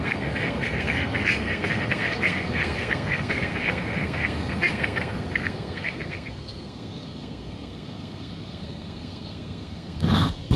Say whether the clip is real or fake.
fake